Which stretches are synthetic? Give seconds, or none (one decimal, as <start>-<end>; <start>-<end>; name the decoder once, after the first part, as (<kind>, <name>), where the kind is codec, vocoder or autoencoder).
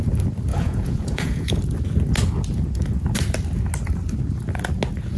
0.5-1.6 (vocoder, Vocos)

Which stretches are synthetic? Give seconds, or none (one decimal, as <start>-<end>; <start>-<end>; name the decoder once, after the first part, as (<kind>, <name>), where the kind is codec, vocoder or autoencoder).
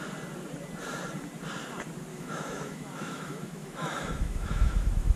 2.1-5.2 (autoencoder, DAC-VAE)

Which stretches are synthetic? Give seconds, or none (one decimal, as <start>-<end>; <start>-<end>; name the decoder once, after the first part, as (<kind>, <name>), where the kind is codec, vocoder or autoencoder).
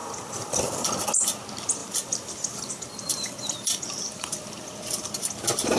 0.0-1.0 (vocoder, BigVGAN v2); 1.8-4.7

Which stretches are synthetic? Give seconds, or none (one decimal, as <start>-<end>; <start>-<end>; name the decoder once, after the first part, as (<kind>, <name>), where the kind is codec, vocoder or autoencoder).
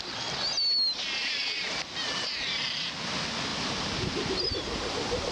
3.5-5.3 (vocoder, BigVGAN v2)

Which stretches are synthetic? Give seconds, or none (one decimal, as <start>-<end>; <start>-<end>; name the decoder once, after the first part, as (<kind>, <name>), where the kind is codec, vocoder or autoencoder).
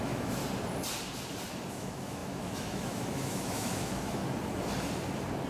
0.0-0.4 (autoencoder, DAC-VAE); 1.7-4.2